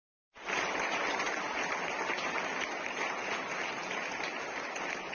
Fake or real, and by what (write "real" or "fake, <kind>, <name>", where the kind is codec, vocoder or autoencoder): real